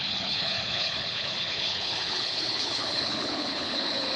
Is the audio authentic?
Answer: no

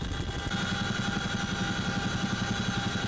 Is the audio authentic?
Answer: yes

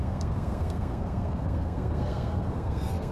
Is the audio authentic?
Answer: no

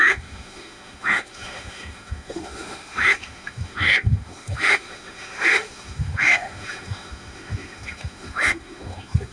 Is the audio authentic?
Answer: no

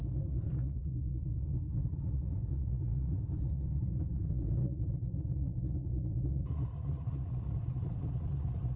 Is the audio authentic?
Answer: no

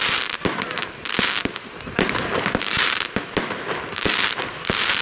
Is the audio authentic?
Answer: yes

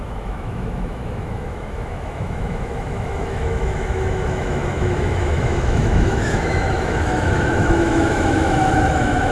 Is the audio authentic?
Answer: no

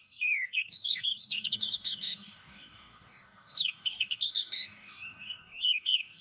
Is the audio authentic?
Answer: no